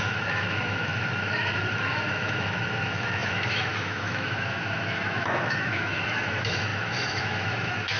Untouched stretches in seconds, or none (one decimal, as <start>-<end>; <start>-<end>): none